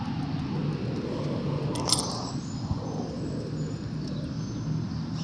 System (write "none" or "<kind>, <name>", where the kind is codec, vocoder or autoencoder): none